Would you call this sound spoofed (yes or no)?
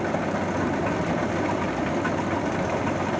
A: no